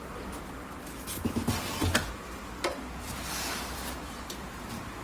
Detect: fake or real real